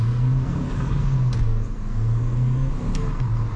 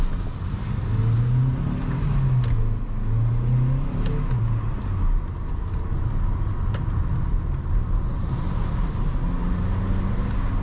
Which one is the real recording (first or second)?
second